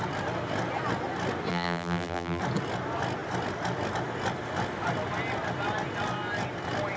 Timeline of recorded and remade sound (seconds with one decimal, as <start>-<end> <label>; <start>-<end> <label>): 0.0-1.5 recorded; 1.5-2.4 remade; 2.4-7.0 recorded